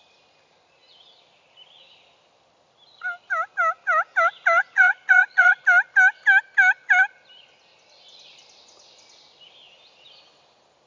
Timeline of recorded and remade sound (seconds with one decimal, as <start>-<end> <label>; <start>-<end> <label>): 0.0-4.6 recorded; 4.6-5.6 remade; 5.6-10.9 recorded